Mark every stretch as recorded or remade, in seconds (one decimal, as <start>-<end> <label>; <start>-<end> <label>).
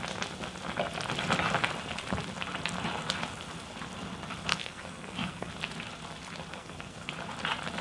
0.0-4.5 recorded; 4.5-5.5 remade; 5.5-6.5 recorded; 6.5-7.1 remade; 7.1-7.8 recorded